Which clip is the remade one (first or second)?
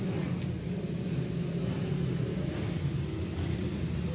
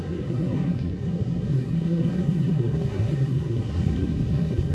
second